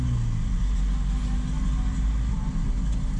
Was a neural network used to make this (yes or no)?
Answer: no